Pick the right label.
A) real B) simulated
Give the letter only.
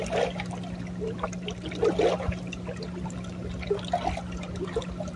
A